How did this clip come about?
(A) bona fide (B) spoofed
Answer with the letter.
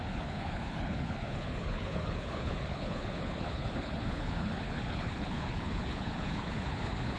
B